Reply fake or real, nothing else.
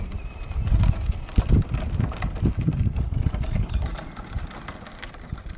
real